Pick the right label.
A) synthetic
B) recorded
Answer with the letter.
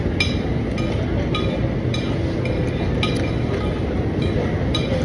B